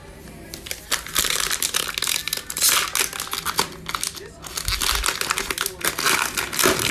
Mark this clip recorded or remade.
recorded